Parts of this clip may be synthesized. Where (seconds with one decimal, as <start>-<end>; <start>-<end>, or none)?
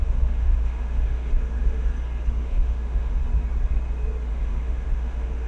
0.0-1.9; 2.4-3.2; 4.3-5.5